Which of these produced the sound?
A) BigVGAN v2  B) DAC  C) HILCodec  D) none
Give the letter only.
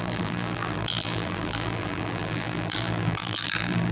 A